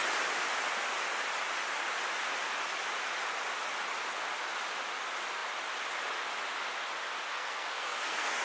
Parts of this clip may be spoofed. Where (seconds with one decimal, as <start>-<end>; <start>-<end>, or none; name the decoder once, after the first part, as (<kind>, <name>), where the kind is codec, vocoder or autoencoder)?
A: 7.3-8.4 (codec, SNAC)